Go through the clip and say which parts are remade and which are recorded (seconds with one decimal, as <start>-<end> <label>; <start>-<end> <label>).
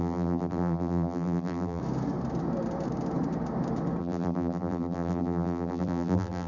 0.0-1.8 remade; 1.8-4.0 recorded; 4.0-6.5 remade